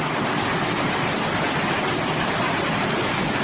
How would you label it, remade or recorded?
recorded